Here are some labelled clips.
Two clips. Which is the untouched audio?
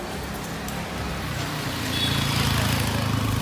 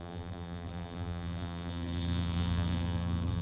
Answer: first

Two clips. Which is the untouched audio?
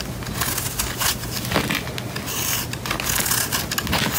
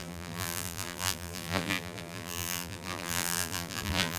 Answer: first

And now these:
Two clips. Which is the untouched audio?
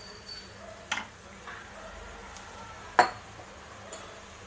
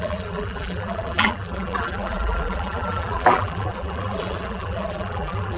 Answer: first